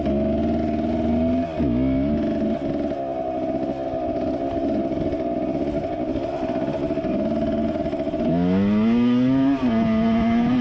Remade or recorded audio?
recorded